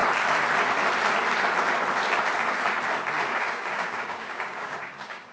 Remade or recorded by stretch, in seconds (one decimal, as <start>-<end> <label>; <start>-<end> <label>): 0.0-3.2 recorded; 3.2-5.3 remade